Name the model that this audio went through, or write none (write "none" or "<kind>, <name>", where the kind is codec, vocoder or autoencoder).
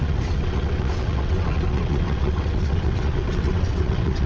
vocoder, WaveNeXt